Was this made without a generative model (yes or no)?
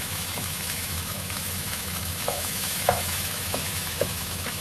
no